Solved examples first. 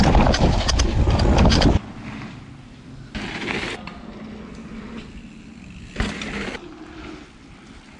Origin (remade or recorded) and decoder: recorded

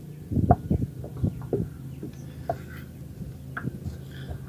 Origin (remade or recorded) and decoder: recorded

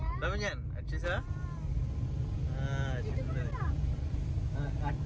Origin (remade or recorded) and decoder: recorded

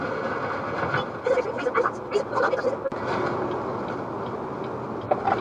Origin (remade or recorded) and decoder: recorded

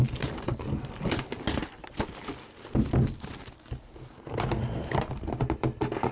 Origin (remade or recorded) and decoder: recorded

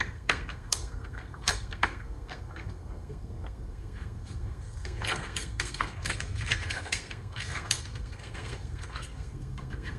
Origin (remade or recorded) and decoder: remade, codec, SNAC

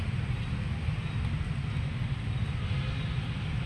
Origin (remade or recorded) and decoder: recorded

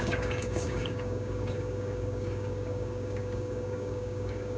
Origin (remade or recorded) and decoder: remade, codec, DAC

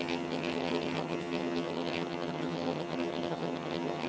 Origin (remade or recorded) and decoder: remade, vocoder, HiFi-GAN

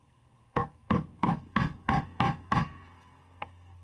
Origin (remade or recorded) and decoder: remade, codec, SNAC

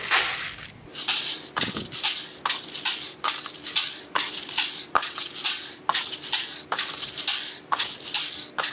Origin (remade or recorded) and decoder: recorded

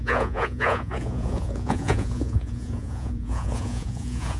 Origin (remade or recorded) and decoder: remade, vocoder, Vocos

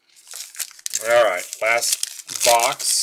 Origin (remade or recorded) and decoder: recorded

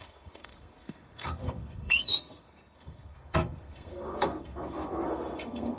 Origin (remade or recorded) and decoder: remade, codec, SNAC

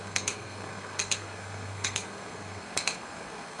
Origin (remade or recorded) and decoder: remade, codec, SNAC